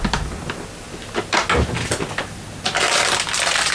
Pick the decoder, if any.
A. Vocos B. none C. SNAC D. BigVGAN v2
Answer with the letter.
B